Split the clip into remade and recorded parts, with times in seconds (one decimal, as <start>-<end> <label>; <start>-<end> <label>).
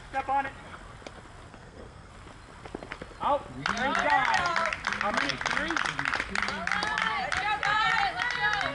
0.0-1.5 recorded; 1.5-2.1 remade; 2.1-8.7 recorded